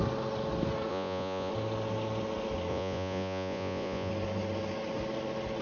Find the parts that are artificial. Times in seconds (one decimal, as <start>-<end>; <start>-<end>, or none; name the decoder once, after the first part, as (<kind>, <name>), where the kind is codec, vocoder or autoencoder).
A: 0.9-1.5 (vocoder, Vocos); 2.7-4.1